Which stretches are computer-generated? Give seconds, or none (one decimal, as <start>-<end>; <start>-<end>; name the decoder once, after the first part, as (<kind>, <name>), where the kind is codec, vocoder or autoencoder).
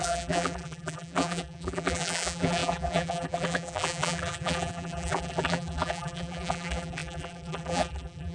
0.0-8.3 (vocoder, BigVGAN v2)